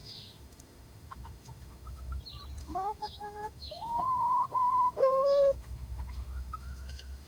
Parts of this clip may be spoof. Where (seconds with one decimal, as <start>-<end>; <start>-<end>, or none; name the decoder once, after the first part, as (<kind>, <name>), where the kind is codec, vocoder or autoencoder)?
0.0-2.2 (autoencoder, DAC-VAE); 2.6-7.3